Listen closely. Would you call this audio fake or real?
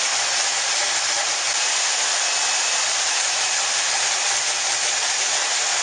real